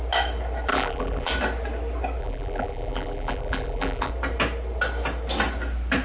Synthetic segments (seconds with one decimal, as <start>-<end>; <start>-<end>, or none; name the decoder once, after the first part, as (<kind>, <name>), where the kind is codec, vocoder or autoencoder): 0.7-1.3 (vocoder, BigVGAN v2); 2.2-4.1